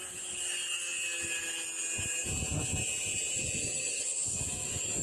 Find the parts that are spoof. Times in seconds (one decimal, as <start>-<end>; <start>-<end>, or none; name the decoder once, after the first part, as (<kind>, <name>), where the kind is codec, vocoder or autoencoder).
3.9-4.5 (codec, HILCodec)